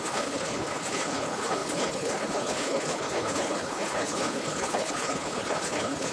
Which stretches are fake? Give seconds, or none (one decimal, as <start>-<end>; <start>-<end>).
0.0-6.1